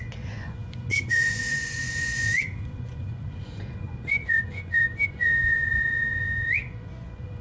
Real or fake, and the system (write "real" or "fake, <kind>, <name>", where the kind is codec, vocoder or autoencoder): fake, vocoder, Vocos